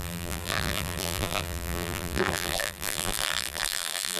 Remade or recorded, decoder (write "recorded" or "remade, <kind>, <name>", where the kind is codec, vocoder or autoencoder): remade, vocoder, BigVGAN v2